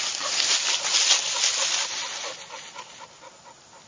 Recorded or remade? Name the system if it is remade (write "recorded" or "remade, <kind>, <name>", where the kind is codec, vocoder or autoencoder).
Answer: recorded